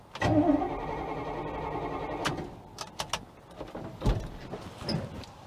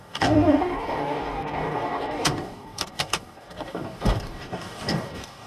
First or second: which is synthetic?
second